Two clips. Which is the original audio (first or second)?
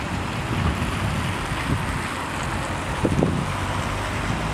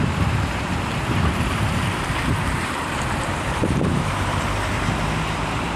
first